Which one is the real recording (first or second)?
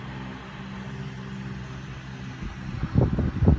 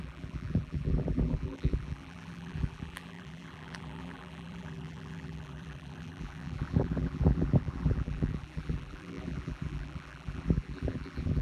first